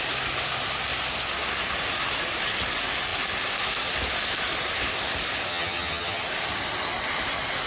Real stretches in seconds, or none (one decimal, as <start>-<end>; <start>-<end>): 0.0-5.5; 6.2-7.7